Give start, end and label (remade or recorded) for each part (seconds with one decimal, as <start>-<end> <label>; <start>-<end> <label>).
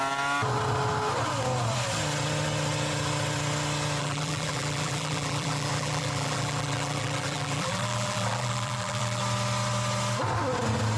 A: 0.0-4.0 recorded; 4.0-9.2 remade; 9.2-11.0 recorded